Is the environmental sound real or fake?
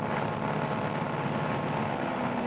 real